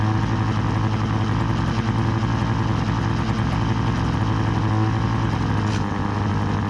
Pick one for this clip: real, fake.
real